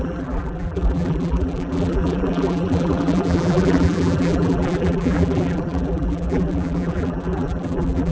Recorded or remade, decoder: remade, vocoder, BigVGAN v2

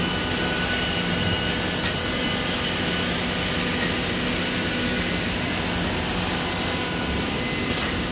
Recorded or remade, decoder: recorded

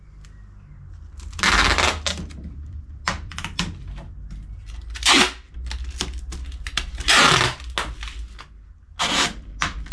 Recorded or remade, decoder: recorded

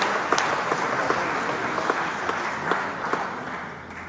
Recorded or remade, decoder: recorded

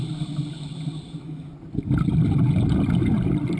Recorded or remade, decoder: recorded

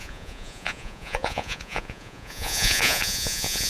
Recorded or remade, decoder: remade, vocoder, Vocos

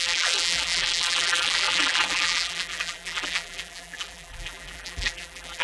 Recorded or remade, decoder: remade, vocoder, BigVGAN v2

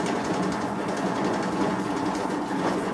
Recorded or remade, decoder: remade, vocoder, Vocos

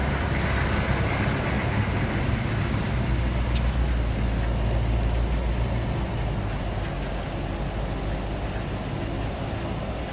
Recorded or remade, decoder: recorded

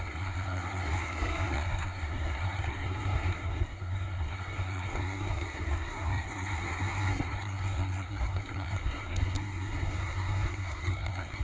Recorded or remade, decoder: remade, codec, SNAC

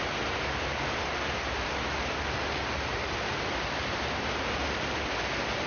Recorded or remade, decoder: recorded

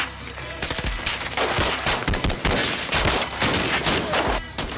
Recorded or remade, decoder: recorded